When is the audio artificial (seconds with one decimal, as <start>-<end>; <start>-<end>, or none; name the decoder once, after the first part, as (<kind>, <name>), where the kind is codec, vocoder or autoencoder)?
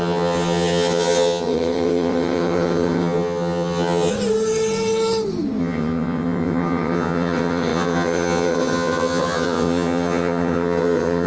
0.0-4.1 (vocoder, HiFi-GAN); 5.6-11.3